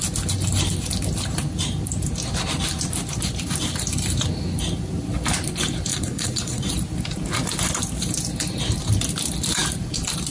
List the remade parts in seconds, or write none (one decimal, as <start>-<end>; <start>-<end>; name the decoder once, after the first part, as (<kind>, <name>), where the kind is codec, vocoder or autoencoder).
5.9-6.7 (vocoder, Vocos)